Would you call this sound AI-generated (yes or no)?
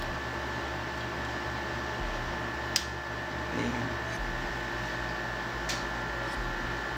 no